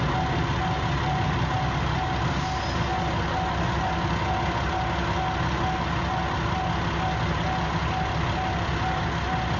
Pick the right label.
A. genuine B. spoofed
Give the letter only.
A